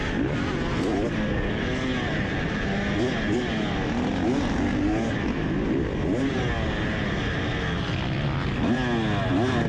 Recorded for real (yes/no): yes